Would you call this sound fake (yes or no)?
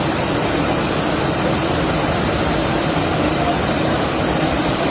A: no